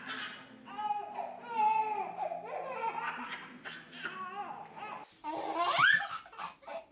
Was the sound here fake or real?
real